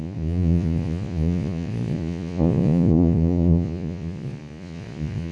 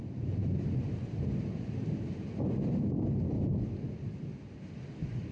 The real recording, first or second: second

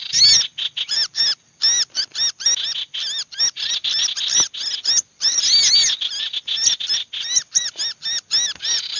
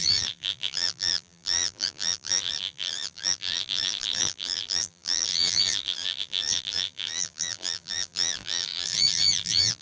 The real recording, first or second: first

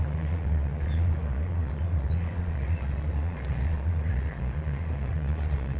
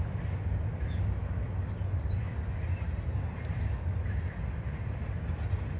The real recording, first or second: second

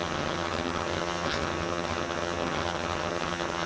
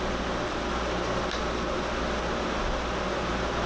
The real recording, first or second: second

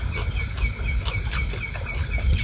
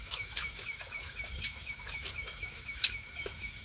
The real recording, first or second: first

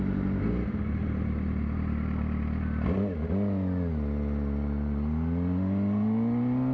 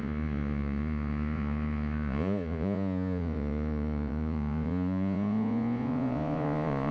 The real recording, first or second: first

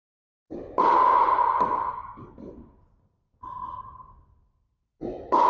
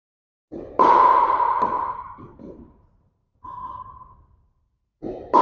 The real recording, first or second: first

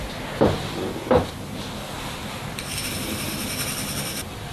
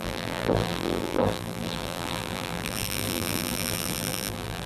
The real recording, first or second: first